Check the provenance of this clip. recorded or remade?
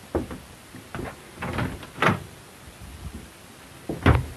recorded